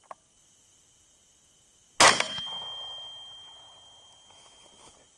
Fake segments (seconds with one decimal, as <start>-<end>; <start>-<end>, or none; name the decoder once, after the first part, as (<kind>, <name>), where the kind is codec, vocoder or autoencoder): none